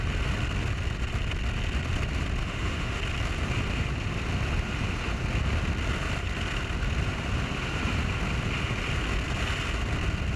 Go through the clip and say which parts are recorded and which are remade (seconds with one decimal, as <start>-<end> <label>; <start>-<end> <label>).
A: 0.0-2.4 recorded; 2.4-3.0 remade; 3.0-10.4 recorded